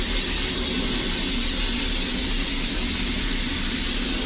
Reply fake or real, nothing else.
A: real